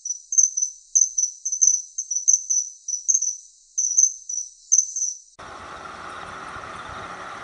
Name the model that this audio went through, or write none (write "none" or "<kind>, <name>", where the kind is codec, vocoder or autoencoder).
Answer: none